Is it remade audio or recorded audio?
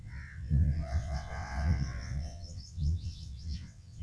remade